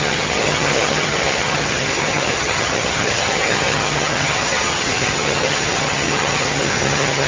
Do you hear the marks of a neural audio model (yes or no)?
yes